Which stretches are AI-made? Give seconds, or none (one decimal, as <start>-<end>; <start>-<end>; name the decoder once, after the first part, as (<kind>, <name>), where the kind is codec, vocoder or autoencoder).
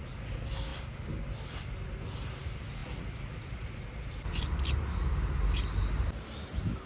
none